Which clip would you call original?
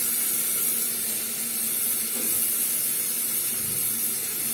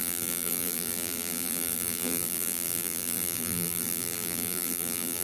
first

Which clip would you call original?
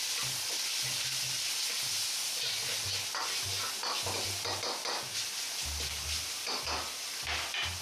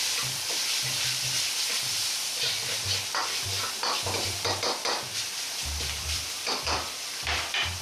first